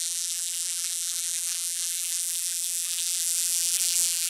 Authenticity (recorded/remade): remade